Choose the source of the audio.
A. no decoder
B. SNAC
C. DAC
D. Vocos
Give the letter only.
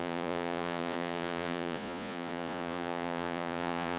D